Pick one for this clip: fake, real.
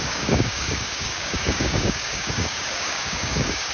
fake